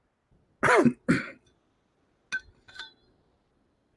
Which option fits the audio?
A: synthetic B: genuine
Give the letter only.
B